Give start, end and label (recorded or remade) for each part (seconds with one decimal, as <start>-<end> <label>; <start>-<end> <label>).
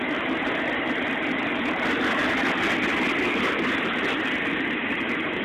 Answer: 0.0-5.4 recorded